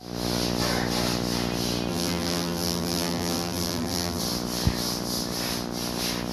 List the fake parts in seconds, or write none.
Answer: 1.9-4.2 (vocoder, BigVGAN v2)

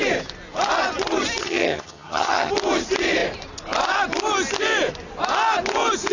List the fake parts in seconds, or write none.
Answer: 1.4-2.5 (vocoder, HiFi-GAN)

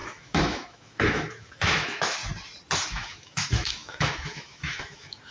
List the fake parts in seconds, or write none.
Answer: 0.0-2.2 (autoencoder, DAC-VAE); 2.9-5.3

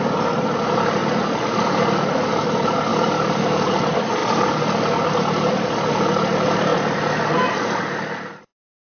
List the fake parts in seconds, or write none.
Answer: 2.9-3.7 (vocoder, BigVGAN v2)

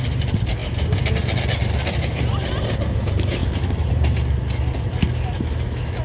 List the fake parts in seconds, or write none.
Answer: 0.6-1.1 (vocoder, BigVGAN v2); 1.6-2.5

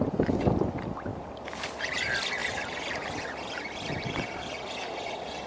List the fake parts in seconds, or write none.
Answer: 2.4-3.1 (vocoder, BigVGAN v2)

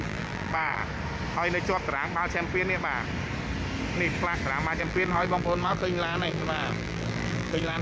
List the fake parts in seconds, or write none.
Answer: 0.0-0.8 (vocoder, BigVGAN v2); 4.8-7.8